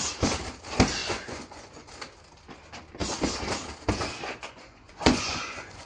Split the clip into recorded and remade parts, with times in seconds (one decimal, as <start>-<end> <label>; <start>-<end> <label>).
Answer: 0.0-1.0 recorded; 1.0-1.9 remade; 1.9-4.4 recorded; 4.4-5.9 remade